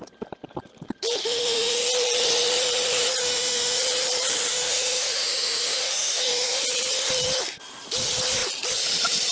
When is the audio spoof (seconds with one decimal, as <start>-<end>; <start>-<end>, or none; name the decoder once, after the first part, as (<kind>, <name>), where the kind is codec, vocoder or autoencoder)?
1.2-1.8 (autoencoder, DAC-VAE); 3.2-3.8; 4.5-6.6